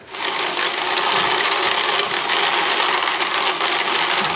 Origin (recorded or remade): recorded